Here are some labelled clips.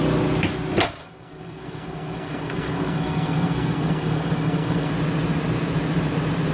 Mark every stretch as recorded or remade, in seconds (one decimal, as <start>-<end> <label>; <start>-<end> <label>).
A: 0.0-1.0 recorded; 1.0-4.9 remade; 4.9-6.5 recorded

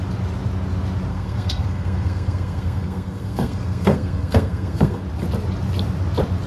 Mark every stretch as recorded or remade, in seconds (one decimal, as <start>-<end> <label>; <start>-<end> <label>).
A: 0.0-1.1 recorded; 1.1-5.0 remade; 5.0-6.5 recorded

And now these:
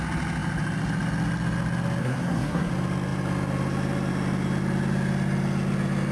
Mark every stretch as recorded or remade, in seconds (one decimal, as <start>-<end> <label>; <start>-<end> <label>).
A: 0.0-2.0 recorded; 2.0-2.7 remade; 2.7-6.1 recorded

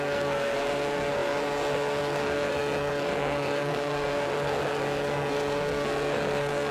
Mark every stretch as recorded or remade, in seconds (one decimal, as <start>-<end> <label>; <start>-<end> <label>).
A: 0.0-6.7 remade